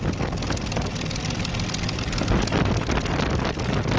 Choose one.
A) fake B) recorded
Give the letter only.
B